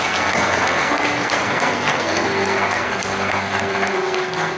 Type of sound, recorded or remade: remade